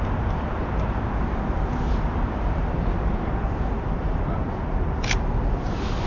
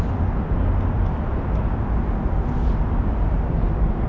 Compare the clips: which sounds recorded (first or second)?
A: second